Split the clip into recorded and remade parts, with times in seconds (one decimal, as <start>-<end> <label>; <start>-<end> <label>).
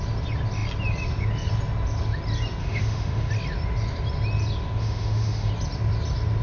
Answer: 0.0-2.6 recorded; 2.6-3.3 remade; 3.3-4.8 recorded; 4.8-5.5 remade; 5.5-6.4 recorded